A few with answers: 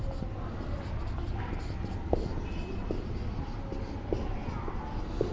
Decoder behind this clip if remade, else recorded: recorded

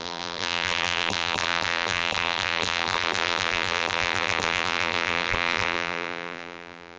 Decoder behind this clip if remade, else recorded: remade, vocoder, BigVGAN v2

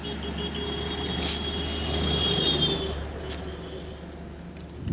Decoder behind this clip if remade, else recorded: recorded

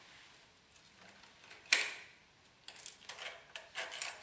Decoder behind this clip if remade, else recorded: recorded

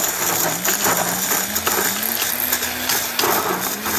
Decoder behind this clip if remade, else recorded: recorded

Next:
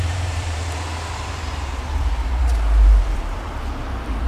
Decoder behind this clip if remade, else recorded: remade, vocoder, BigVGAN v2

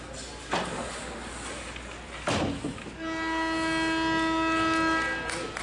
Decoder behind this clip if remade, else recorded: recorded